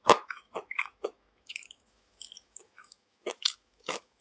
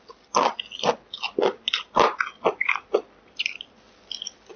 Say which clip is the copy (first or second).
first